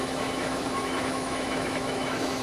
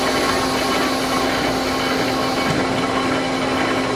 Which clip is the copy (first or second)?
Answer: first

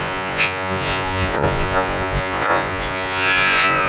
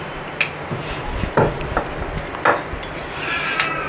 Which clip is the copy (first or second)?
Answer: first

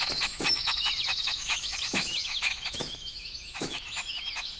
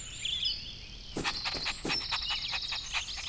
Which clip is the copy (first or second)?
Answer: first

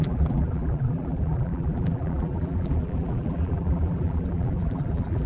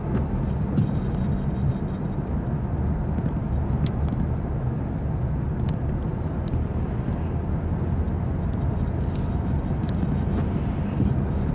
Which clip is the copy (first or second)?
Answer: first